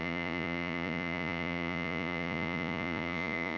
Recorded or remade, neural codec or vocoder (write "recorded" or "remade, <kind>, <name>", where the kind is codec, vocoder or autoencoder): remade, vocoder, Vocos